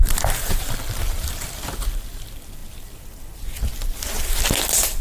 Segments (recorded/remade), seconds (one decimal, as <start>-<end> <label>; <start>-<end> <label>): 0.0-5.0 recorded